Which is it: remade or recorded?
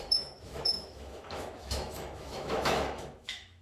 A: remade